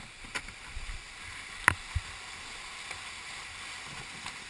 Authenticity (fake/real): real